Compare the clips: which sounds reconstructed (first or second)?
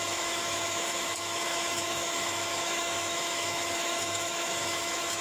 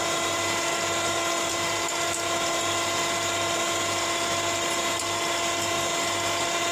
first